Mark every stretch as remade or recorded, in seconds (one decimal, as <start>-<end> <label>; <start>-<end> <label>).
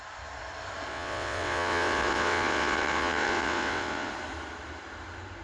0.0-0.9 recorded; 0.9-4.1 remade; 4.1-5.4 recorded